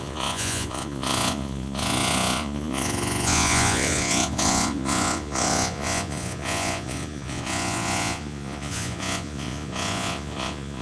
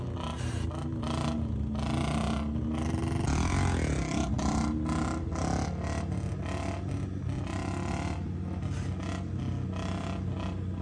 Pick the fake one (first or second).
first